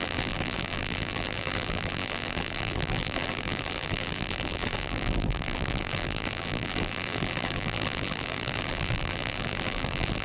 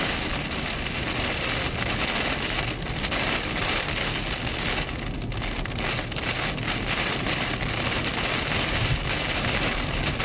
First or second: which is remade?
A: first